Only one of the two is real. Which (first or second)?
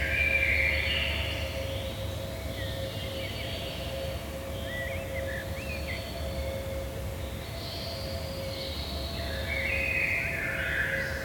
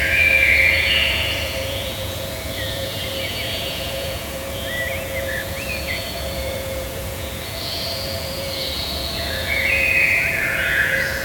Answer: first